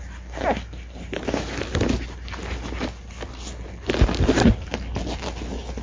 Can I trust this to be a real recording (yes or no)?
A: yes